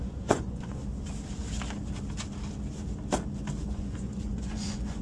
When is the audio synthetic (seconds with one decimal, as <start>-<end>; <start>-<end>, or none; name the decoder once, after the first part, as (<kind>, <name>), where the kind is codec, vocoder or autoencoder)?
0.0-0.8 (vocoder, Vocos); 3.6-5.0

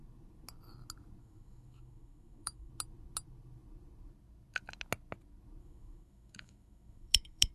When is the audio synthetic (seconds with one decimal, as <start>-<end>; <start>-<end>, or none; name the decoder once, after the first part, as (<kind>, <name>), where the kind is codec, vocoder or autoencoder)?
1.2-2.7 (autoencoder, DAC-VAE); 5.6-7.5

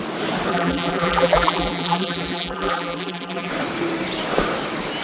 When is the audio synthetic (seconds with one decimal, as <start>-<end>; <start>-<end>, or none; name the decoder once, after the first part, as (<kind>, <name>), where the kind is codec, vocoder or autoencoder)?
0.5-3.5 (vocoder, BigVGAN v2)

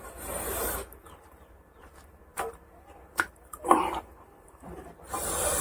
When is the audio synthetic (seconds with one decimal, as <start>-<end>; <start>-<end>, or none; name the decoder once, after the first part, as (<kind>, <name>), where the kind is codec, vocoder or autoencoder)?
2.3-5.6 (vocoder, BigVGAN v2)